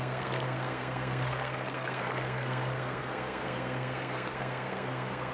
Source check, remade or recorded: remade